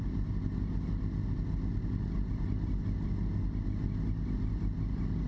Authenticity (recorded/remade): recorded